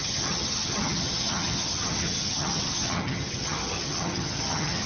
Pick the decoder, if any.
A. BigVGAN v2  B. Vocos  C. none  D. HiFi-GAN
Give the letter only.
D